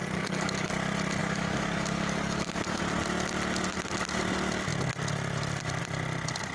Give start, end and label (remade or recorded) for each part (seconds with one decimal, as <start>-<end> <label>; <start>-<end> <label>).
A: 0.0-0.7 remade; 0.7-1.2 recorded; 1.2-2.8 remade; 2.8-6.5 recorded